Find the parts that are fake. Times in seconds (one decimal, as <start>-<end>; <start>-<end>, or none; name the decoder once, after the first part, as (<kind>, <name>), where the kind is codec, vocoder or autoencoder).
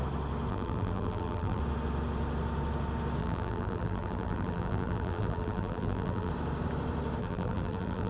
0.5-1.6 (vocoder, BigVGAN v2); 3.2-6.3; 7.2-8.1